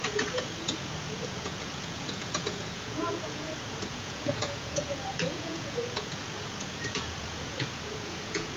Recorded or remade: remade